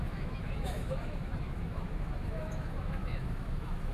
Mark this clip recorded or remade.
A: remade